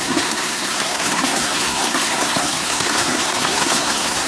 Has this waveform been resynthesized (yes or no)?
yes